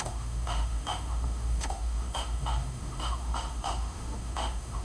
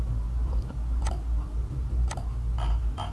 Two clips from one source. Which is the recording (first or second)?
second